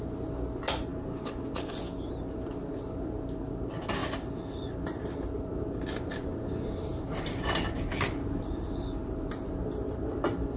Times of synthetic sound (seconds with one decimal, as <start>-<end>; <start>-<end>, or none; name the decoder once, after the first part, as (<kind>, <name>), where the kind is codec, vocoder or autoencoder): 0.9-1.7 (codec, DAC)